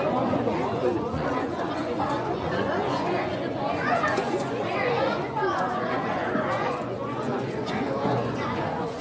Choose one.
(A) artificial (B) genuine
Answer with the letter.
A